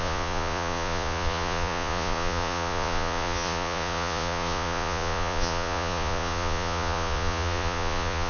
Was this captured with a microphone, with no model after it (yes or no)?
no